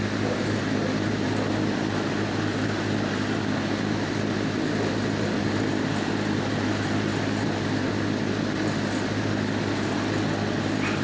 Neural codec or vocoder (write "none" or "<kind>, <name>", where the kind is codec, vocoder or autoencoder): none